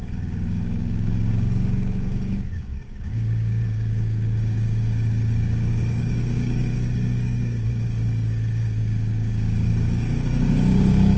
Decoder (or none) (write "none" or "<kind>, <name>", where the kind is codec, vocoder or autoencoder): codec, DAC